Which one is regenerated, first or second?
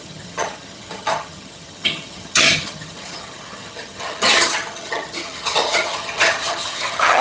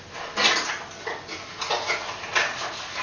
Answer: first